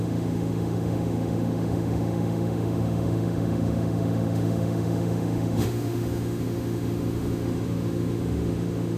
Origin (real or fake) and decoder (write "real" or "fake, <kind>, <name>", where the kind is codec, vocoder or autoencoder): fake, autoencoder, DAC-VAE